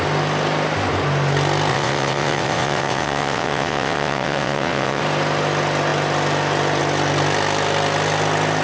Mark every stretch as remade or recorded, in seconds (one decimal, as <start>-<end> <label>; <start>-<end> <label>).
0.0-1.7 recorded; 1.7-5.0 remade; 5.0-8.6 recorded